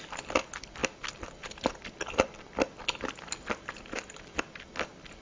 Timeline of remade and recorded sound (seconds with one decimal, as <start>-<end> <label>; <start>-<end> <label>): 0.0-5.2 recorded